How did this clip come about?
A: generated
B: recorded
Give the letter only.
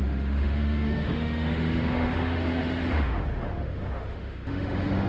A